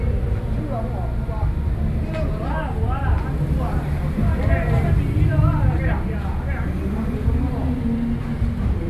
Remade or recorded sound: recorded